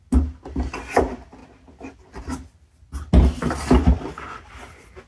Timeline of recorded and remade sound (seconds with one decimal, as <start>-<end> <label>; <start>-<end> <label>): 0.0-5.1 recorded